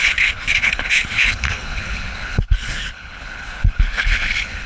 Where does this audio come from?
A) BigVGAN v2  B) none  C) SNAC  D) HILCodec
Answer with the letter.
D